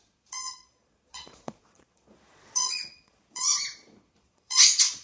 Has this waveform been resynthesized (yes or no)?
yes